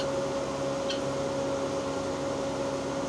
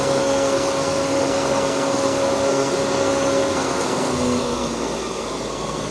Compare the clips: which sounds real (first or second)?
first